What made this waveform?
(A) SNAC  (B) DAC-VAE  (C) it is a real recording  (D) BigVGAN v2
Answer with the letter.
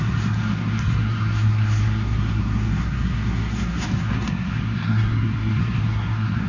A